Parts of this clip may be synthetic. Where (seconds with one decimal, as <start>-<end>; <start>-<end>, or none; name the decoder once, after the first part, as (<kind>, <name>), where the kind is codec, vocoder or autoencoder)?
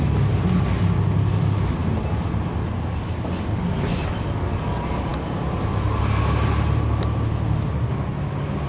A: none